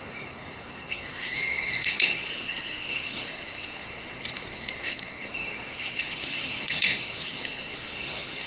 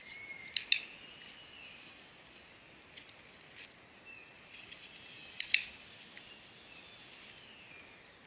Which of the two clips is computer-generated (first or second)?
first